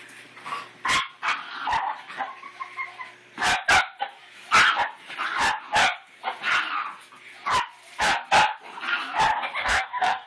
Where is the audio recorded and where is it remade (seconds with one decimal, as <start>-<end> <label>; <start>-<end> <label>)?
0.0-9.6 recorded; 9.6-10.3 remade